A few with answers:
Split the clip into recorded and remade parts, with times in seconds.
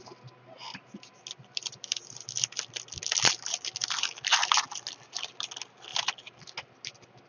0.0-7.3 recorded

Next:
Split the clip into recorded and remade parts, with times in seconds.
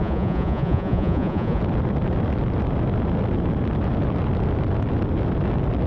0.0-1.6 remade; 1.6-5.9 recorded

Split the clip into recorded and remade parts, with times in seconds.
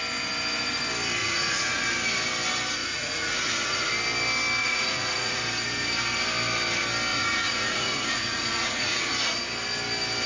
0.0-1.2 recorded; 1.2-1.8 remade; 1.8-2.8 recorded; 2.8-3.9 remade; 3.9-4.6 recorded; 4.6-5.4 remade; 5.4-7.1 recorded; 7.1-9.1 remade; 9.1-10.3 recorded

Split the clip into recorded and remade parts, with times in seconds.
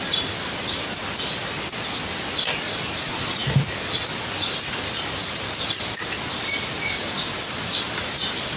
0.0-8.6 recorded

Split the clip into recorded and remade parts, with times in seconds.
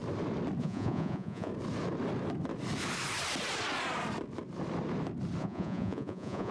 0.0-0.6 recorded; 0.6-1.5 remade; 1.5-5.4 recorded; 5.4-6.5 remade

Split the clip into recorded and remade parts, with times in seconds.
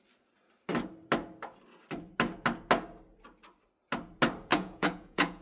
0.0-4.5 recorded; 4.5-5.4 remade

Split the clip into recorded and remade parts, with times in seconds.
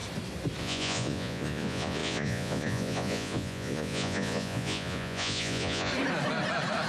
0.0-0.6 recorded; 0.6-5.9 remade; 5.9-6.9 recorded